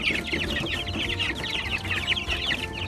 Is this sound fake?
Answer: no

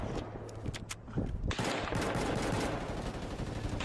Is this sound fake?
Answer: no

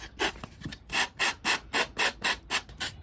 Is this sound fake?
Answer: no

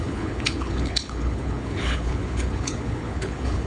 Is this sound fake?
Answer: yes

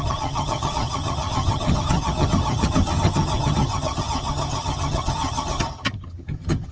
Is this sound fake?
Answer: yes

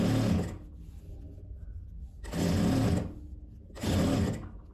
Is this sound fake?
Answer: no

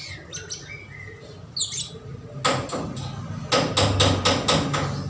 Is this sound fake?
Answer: no